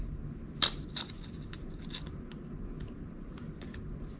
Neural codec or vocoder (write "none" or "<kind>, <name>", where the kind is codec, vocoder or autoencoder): none